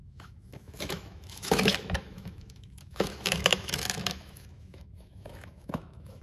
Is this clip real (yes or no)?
no